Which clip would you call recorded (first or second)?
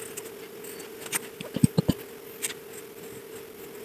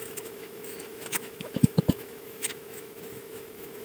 first